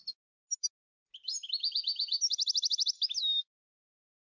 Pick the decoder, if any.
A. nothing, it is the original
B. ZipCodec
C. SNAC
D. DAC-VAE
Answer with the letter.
A